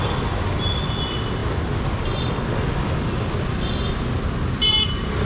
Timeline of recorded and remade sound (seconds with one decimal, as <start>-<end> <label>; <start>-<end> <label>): 0.0-5.2 recorded